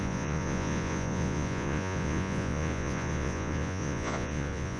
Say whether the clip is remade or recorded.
remade